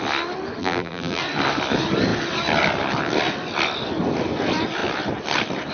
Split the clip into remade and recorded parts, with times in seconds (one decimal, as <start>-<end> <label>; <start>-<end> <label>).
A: 0.0-0.6 recorded; 0.6-1.2 remade; 1.2-5.7 recorded